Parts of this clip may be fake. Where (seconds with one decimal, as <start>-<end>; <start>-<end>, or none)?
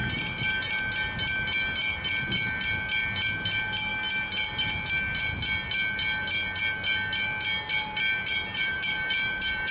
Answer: 0.0-0.6; 8.3-9.7